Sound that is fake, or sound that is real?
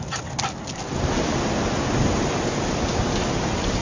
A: real